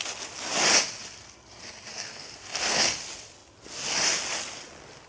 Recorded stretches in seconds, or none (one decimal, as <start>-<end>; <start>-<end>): 0.0-1.9; 3.0-5.1